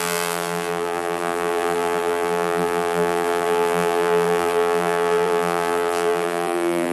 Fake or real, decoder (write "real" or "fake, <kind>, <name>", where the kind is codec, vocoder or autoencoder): fake, vocoder, BigVGAN v2